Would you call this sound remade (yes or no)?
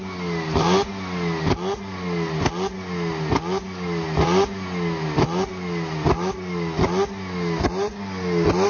no